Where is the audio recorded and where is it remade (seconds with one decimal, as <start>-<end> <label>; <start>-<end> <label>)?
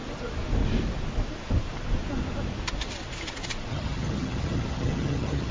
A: 0.0-3.7 recorded; 3.7-5.5 remade